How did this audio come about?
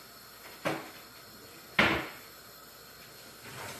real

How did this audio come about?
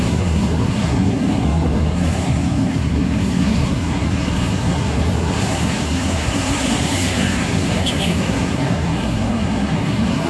fake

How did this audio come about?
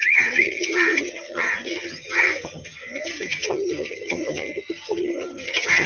fake